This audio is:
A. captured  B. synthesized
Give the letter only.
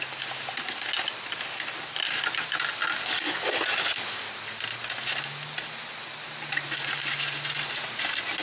A